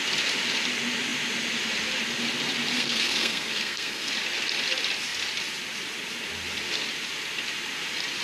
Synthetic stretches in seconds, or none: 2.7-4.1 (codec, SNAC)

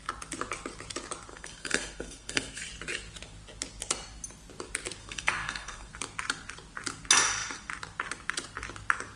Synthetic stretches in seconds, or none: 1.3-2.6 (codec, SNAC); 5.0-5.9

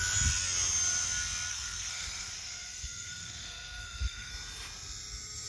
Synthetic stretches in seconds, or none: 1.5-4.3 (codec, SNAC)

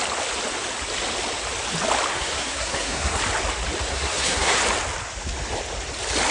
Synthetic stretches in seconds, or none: 2.1-3.2 (codec, SNAC); 3.9-4.6

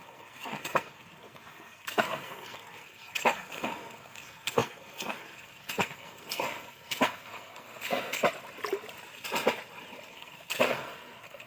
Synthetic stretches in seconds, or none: 0.0-8.2 (codec, SNAC); 10.1-11.5